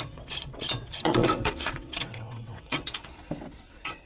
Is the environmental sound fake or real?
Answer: fake